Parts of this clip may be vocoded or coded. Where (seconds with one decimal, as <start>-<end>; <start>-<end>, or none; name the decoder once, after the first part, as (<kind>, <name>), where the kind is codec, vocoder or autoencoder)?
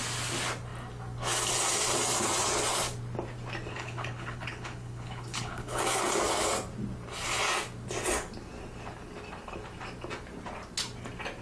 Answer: 3.7-5.8 (codec, HILCodec)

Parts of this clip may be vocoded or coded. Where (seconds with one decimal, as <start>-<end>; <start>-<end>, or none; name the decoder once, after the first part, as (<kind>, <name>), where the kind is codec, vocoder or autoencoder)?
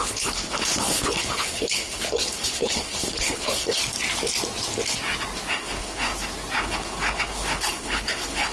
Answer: 0.0-3.8 (codec, HILCodec); 5.5-6.1; 6.6-8.5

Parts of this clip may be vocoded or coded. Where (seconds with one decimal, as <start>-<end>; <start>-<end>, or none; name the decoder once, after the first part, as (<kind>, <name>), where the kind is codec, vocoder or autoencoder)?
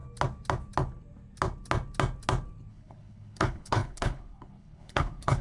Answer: 2.7-5.4 (codec, HILCodec)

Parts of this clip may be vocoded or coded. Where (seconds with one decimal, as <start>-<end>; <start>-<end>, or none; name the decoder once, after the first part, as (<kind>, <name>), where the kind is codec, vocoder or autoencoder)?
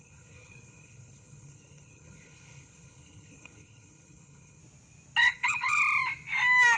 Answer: 0.0-4.6 (codec, HILCodec); 5.2-5.8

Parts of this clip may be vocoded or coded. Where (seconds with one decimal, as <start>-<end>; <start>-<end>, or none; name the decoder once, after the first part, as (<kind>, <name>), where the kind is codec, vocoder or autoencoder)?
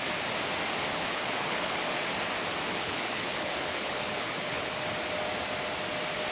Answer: 0.9-2.0 (codec, HILCodec); 2.7-4.7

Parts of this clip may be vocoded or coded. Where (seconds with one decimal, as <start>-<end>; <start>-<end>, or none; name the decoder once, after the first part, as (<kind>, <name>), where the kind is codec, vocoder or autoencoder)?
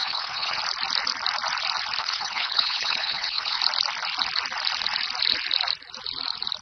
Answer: 0.0-0.6 (codec, HILCodec); 2.0-3.6